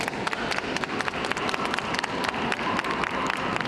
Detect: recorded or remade recorded